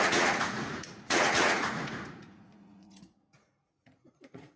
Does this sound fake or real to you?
fake